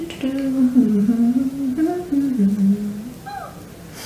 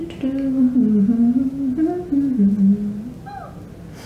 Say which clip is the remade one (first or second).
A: first